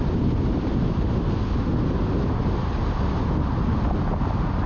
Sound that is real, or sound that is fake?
real